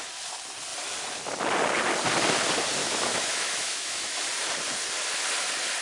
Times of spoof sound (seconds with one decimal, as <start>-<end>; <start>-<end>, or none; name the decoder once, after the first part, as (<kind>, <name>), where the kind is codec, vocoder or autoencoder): 2.8-4.2 (autoencoder, DAC-VAE)